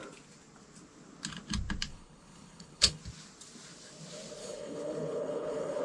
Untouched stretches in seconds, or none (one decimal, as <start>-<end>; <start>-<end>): 0.0-1.9; 3.0-4.4